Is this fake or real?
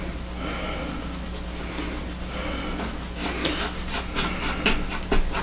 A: real